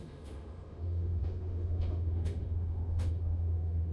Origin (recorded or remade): remade